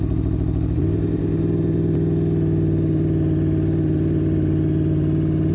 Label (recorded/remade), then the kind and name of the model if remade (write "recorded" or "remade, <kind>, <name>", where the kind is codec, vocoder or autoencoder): recorded